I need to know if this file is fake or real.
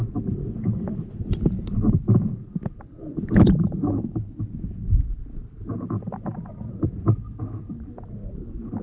real